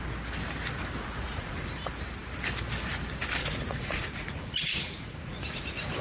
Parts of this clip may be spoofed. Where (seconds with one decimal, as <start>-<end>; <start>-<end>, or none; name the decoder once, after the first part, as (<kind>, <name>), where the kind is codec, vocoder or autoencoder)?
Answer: 1.0-1.7 (vocoder, Vocos); 3.4-6.0